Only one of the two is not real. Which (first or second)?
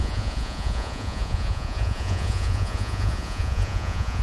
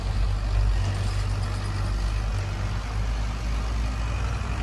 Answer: first